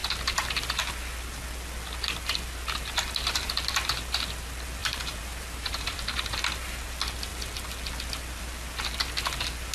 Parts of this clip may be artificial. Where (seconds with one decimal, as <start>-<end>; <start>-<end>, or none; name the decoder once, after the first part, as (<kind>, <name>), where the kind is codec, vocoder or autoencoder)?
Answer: 4.8-6.4 (vocoder, BigVGAN v2)